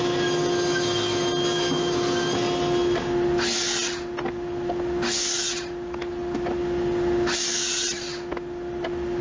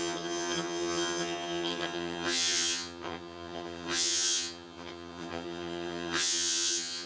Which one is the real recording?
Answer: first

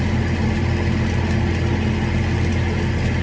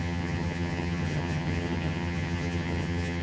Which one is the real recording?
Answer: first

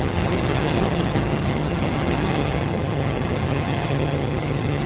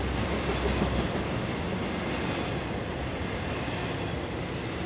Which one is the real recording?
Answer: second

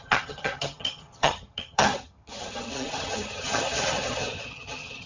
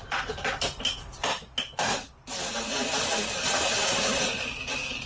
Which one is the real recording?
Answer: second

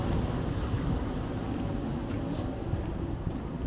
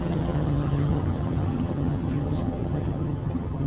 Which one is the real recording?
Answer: first